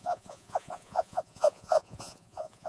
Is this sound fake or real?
fake